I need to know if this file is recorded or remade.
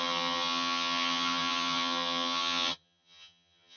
remade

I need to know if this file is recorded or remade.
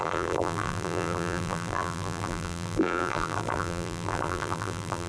remade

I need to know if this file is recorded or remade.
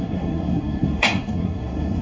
remade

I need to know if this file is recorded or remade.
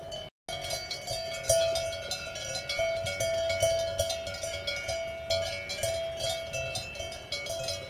recorded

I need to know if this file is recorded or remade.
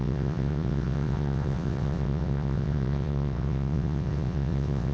remade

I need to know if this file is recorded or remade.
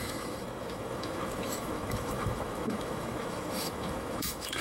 remade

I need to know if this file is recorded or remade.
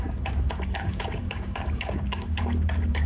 remade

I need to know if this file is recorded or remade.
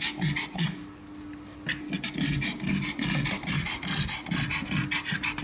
recorded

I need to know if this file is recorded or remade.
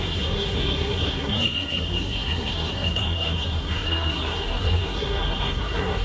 remade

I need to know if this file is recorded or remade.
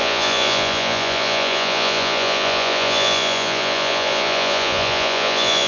remade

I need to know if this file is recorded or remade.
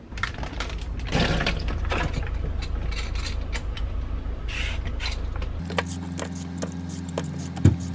recorded